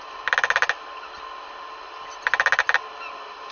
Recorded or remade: recorded